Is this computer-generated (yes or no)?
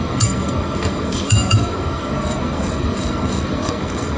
yes